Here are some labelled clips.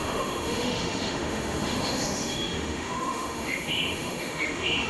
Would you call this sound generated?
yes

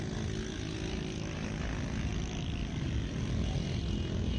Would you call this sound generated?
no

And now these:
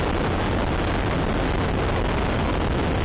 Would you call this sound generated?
no